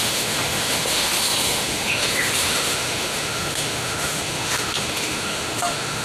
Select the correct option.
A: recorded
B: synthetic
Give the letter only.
B